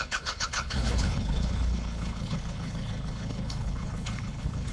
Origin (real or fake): fake